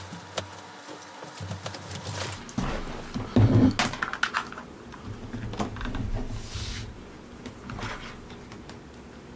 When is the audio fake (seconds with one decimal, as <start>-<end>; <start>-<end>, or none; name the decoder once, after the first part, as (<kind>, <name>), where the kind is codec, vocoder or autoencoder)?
none